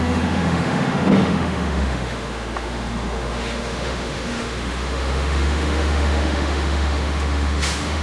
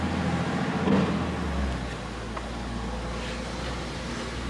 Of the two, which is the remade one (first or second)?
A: first